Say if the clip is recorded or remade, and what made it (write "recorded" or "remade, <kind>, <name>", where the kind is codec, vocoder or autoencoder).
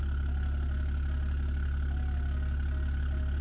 recorded